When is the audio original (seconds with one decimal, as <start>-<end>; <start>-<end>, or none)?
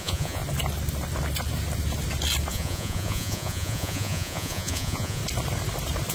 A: 0.4-2.5; 5.2-6.1